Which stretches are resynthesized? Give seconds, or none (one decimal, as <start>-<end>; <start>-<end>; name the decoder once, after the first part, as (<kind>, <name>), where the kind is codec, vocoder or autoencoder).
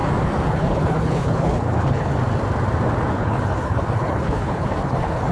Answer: 0.5-2.1 (codec, HILCodec); 3.1-5.3